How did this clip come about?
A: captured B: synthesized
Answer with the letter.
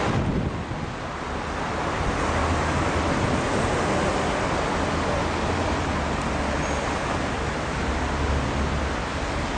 A